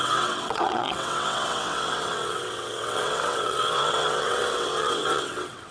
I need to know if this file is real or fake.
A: fake